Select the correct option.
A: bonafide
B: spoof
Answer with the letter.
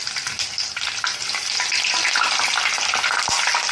A